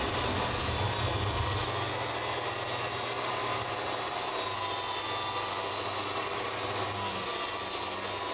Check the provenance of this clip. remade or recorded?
recorded